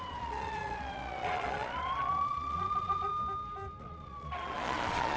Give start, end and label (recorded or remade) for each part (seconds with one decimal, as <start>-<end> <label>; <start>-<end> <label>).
0.0-3.1 remade; 3.1-3.8 recorded; 3.8-5.2 remade